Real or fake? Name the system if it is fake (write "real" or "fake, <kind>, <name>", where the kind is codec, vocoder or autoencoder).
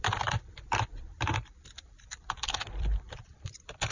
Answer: fake, vocoder, BigVGAN v2